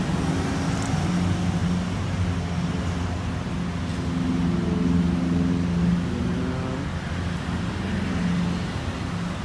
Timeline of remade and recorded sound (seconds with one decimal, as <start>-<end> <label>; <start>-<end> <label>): 0.0-9.4 recorded